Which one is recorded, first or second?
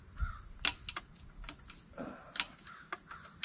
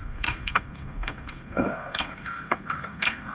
first